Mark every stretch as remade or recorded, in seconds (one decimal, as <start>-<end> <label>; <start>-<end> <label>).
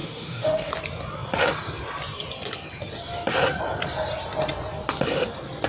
0.0-0.7 remade; 0.7-5.7 recorded